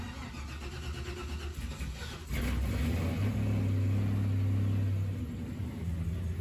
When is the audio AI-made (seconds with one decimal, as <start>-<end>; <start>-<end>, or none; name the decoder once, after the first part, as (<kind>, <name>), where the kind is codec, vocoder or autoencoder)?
none